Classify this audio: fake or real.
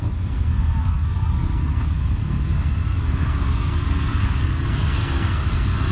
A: fake